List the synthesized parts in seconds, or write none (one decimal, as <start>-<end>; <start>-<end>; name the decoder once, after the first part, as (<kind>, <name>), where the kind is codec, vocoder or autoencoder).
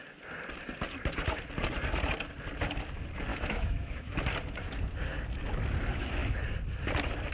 3.3-4.2 (autoencoder, DAC-VAE)